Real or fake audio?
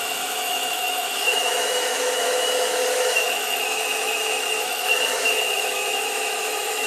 fake